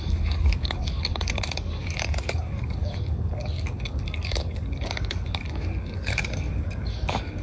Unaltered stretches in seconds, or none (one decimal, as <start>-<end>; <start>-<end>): none